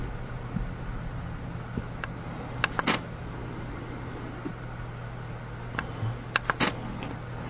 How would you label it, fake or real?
real